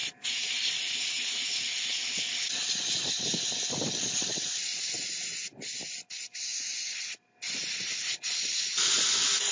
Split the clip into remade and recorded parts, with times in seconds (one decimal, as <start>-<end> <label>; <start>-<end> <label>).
0.0-9.5 recorded